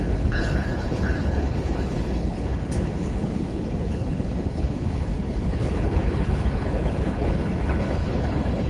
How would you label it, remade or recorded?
remade